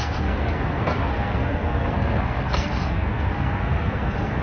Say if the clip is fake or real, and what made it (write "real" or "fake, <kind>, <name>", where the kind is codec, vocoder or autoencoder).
fake, codec, SNAC